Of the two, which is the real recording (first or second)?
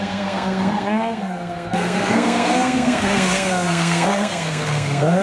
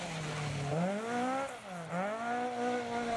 second